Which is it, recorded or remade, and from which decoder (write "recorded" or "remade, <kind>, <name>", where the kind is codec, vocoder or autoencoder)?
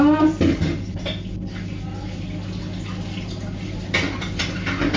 recorded